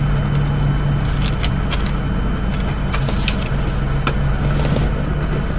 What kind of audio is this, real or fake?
real